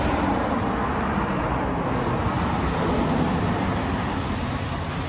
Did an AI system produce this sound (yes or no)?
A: no